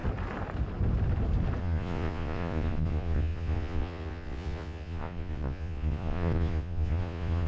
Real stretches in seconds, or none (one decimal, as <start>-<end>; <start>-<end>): 0.0-1.6